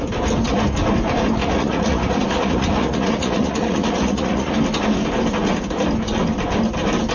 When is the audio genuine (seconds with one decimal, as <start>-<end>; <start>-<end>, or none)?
0.0-1.4; 4.5-7.1